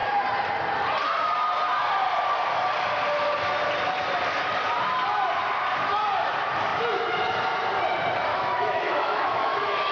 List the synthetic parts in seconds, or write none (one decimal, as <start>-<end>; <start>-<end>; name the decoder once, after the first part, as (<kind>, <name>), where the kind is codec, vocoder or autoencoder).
8.3-9.9 (autoencoder, DAC-VAE)